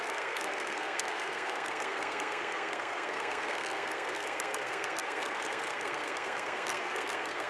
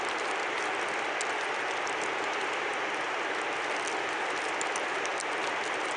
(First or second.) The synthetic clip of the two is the first